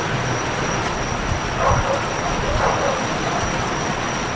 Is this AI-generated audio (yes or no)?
yes